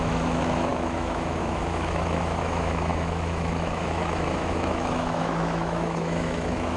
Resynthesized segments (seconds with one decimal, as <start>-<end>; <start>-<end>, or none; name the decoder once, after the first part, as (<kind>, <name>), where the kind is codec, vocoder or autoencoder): 0.0-6.8 (autoencoder, DAC-VAE)